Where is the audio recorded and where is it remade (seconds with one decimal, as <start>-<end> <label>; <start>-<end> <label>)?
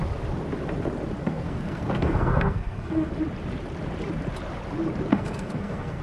0.0-1.2 recorded; 1.2-3.1 remade; 3.1-5.1 recorded; 5.1-6.0 remade